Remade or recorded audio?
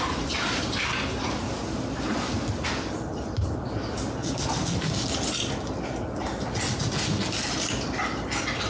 recorded